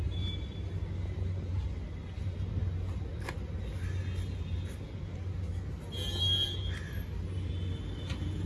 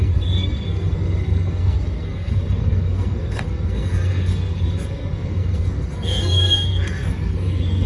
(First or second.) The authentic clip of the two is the first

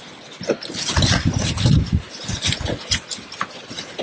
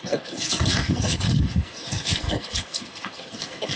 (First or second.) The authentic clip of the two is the first